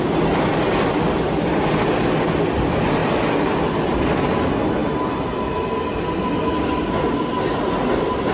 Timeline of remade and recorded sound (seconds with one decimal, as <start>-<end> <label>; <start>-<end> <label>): 0.0-8.3 recorded